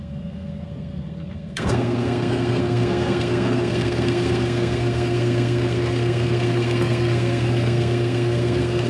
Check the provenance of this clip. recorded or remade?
remade